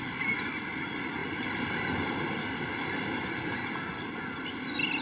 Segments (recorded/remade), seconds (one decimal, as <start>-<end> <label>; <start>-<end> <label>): 0.0-1.2 recorded; 1.2-4.2 remade; 4.2-5.0 recorded